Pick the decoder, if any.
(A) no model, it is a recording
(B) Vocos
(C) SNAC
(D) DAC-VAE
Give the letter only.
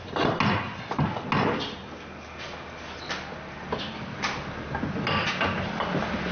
A